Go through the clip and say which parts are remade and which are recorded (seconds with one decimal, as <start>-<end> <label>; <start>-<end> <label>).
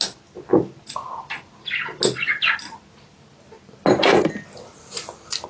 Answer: 0.0-5.5 recorded